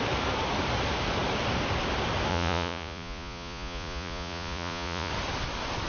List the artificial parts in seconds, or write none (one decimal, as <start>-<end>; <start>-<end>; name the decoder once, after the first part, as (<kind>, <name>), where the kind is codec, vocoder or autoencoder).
2.3-5.1 (vocoder, Vocos)

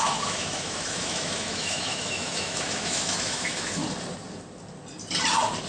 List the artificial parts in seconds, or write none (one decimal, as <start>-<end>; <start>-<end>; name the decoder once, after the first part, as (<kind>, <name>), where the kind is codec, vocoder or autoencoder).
0.0-3.8 (autoencoder, DAC-VAE)

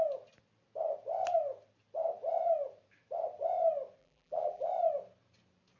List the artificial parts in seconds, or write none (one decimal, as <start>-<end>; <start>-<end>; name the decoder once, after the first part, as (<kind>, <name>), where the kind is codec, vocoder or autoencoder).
4.0-4.7 (vocoder, BigVGAN v2)

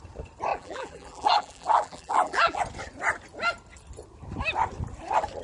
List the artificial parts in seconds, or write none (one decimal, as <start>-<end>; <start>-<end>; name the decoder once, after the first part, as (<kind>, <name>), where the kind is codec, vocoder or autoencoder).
0.5-2.6 (vocoder, BigVGAN v2)

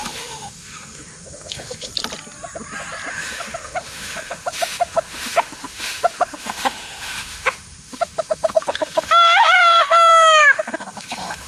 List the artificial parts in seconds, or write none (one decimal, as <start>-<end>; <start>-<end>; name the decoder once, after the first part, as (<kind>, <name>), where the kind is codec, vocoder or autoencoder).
0.0-1.9 (autoencoder, DAC-VAE); 3.1-11.5

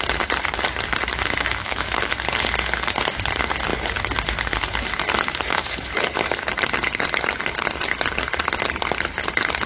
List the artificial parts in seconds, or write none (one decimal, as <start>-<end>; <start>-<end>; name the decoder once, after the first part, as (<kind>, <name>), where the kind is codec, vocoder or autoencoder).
1.1-2.1 (autoencoder, DAC-VAE)

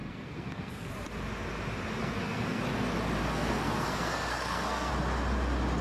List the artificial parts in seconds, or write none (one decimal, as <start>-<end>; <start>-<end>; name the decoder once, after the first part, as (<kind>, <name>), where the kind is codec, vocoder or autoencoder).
0.0-0.9 (codec, SNAC); 2.0-2.6; 3.2-4.9

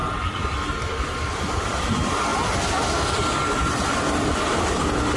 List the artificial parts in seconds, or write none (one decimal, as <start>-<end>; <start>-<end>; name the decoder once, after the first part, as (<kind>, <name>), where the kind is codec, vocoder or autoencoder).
none